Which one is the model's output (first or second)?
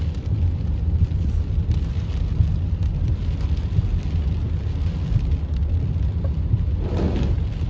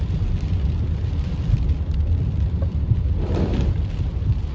second